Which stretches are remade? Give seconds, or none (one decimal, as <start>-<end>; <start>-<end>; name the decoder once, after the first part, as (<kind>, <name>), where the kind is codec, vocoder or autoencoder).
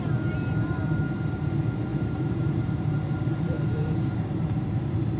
1.9-5.2 (vocoder, BigVGAN v2)